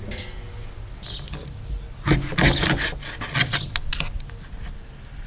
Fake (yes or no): no